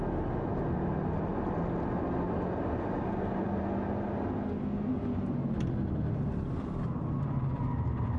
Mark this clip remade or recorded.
recorded